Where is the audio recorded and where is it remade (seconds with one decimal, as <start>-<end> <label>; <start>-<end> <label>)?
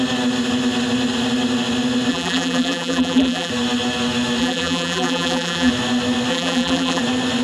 0.0-2.1 recorded; 2.1-3.5 remade; 3.5-4.4 recorded; 4.4-5.7 remade; 5.7-6.3 recorded; 6.3-7.0 remade; 7.0-7.4 recorded